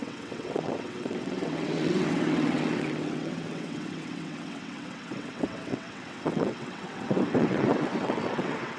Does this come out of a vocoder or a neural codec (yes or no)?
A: yes